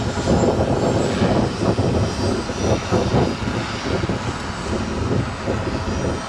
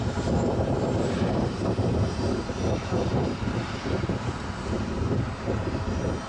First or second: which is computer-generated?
second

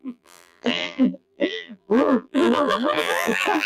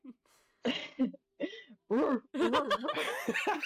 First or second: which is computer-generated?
first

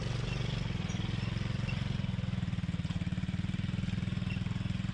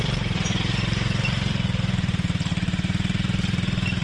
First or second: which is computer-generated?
second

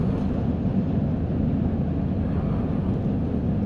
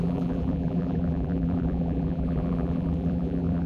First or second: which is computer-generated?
second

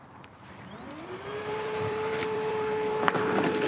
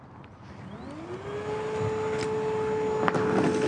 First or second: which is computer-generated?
first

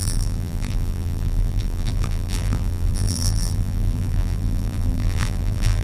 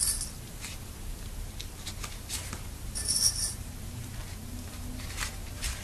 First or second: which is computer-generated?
first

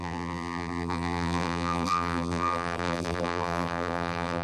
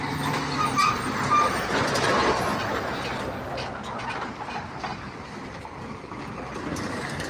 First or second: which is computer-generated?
first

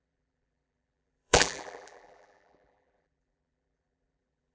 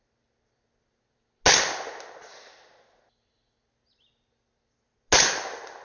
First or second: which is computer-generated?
first